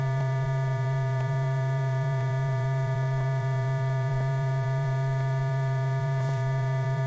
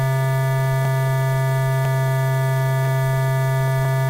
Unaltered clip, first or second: second